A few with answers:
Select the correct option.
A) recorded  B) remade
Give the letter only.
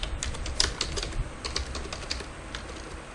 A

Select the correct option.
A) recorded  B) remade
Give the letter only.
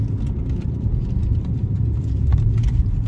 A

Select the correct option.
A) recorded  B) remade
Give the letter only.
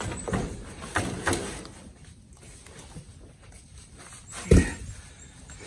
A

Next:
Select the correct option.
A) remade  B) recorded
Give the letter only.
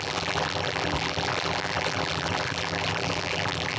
A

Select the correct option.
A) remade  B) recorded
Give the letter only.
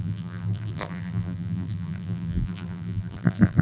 A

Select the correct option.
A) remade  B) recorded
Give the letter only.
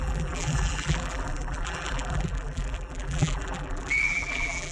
A